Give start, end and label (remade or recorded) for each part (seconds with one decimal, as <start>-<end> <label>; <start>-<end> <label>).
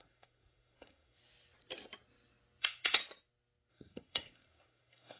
0.0-1.2 remade; 1.2-2.6 recorded; 2.6-3.0 remade; 3.0-3.7 recorded; 3.7-5.2 remade